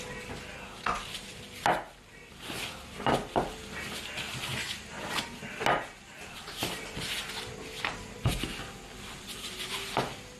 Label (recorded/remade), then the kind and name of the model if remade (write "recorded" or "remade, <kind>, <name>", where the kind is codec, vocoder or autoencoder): recorded